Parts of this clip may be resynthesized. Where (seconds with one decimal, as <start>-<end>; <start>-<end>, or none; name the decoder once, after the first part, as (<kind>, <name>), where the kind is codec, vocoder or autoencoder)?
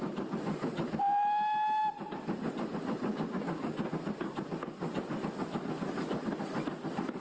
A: 3.1-3.8 (codec, DAC)